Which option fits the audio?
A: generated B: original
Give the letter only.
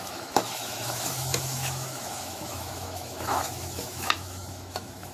A